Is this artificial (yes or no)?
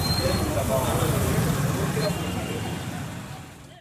no